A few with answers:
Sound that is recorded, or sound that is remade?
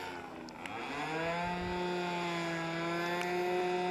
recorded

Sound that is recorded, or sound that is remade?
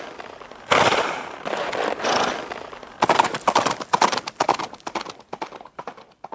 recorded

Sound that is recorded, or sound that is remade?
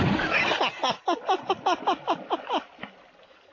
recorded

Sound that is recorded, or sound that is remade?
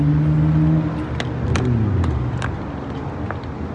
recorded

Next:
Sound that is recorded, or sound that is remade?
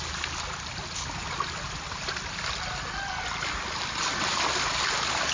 recorded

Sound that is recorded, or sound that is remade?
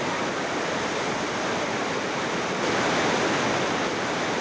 recorded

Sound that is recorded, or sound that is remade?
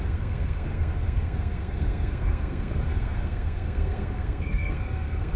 remade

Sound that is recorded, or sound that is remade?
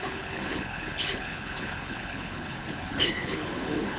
remade